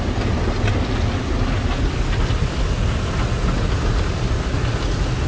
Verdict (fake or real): real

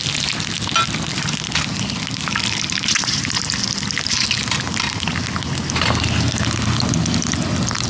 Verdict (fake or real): real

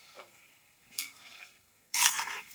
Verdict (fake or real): fake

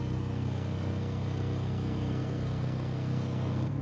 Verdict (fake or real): fake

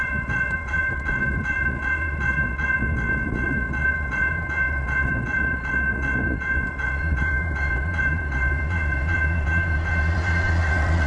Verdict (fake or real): fake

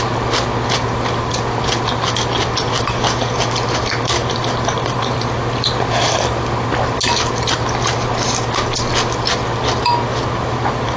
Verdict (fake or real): real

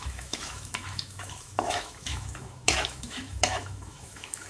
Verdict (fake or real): fake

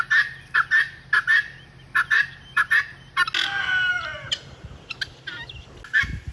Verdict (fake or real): real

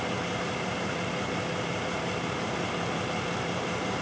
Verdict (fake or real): fake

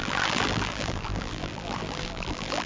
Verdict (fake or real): fake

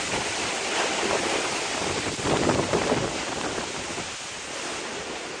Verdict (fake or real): real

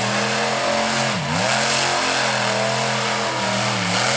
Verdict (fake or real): real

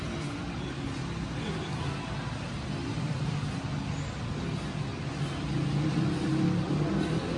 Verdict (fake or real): real